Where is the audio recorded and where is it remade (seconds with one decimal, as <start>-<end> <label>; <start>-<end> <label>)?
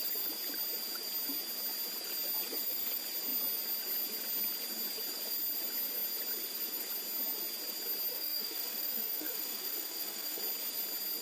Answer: 0.0-8.1 recorded; 8.1-10.4 remade; 10.4-11.2 recorded